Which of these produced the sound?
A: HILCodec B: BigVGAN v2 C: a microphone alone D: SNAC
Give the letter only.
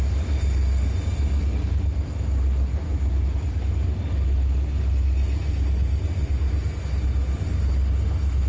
C